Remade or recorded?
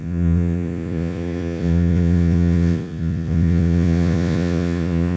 remade